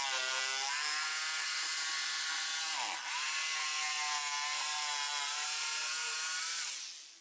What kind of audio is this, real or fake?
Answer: real